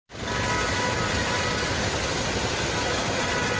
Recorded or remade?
recorded